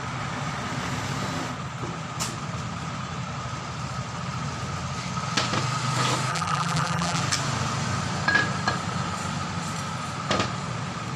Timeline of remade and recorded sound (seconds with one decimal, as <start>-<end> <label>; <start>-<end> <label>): 0.0-6.3 recorded; 6.3-7.2 remade; 7.2-11.2 recorded